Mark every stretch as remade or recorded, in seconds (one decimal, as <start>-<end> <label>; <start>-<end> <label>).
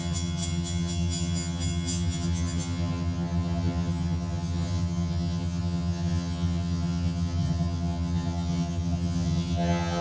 0.0-10.0 remade